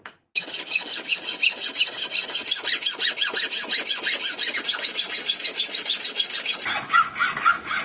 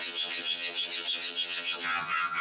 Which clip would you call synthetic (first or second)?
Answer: second